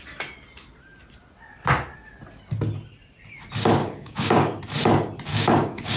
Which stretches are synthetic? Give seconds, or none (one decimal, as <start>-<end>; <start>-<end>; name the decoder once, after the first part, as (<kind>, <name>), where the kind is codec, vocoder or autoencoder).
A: 3.8-4.6 (codec, DAC); 5.3-6.0